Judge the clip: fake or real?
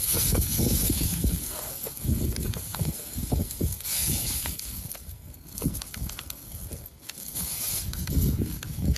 fake